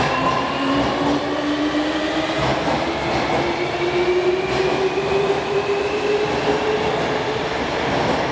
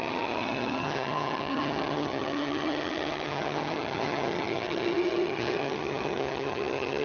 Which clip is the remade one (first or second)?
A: second